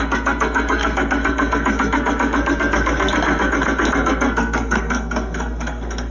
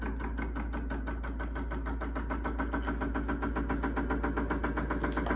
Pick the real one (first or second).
second